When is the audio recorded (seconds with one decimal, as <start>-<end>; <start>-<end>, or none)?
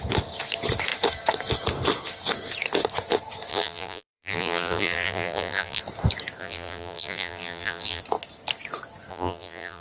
0.0-3.5; 5.8-6.4; 8.0-9.1